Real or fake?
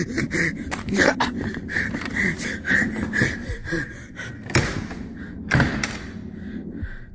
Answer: fake